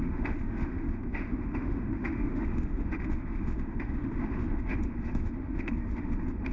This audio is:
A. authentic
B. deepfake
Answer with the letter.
B